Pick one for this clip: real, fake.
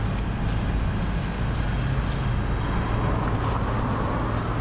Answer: real